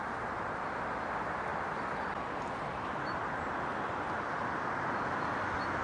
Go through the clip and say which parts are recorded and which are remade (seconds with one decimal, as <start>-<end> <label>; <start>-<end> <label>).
0.0-5.8 recorded